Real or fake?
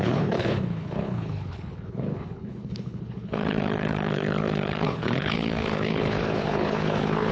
fake